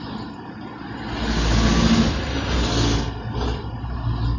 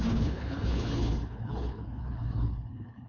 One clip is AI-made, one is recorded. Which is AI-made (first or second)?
second